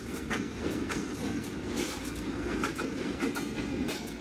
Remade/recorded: remade